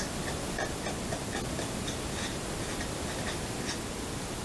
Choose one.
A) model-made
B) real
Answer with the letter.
B